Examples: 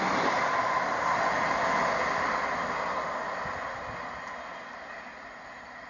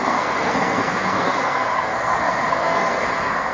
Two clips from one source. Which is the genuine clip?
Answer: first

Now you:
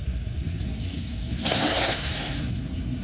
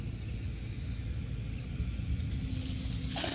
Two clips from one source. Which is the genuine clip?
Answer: second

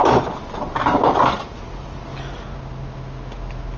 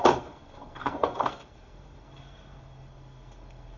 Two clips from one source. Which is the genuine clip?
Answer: first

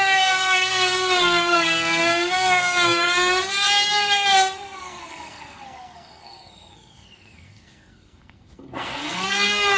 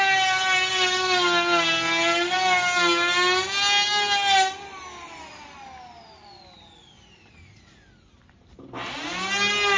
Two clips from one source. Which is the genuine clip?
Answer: second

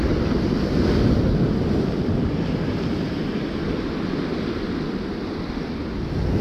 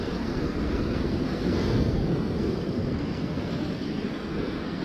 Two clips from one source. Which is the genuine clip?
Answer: first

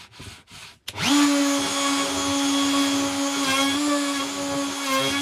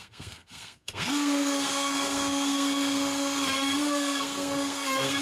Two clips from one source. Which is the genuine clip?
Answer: first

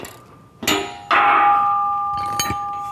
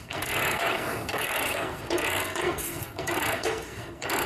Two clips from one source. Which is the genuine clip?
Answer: first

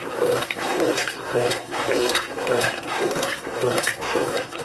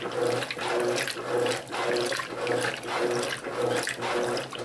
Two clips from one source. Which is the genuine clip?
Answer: second